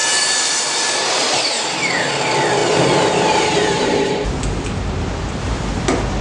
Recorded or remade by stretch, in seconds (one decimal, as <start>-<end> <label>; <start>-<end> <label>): 0.0-2.1 remade; 2.1-2.6 recorded; 2.6-4.4 remade; 4.4-6.2 recorded